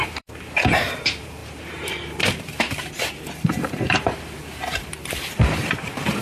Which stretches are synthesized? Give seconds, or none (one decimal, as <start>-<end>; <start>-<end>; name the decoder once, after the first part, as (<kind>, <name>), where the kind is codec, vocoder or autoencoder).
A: 0.0-6.2 (vocoder, BigVGAN v2)